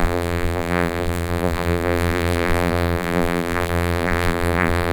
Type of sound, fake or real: fake